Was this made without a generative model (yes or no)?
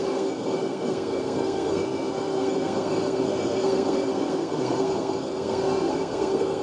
no